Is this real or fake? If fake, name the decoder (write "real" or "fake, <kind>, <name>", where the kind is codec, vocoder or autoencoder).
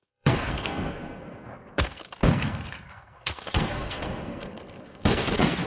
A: fake, codec, SNAC